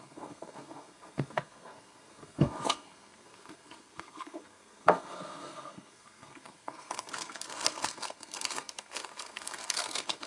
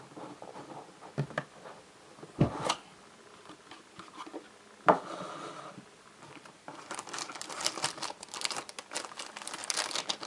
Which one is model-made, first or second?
first